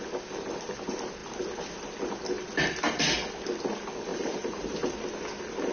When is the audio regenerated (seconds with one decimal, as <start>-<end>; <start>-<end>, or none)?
4.1-5.0